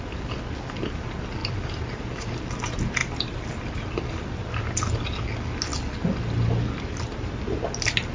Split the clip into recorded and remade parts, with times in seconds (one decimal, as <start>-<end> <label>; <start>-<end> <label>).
0.0-1.4 recorded; 1.4-2.4 remade; 2.4-3.0 recorded; 3.0-4.4 remade; 4.4-8.1 recorded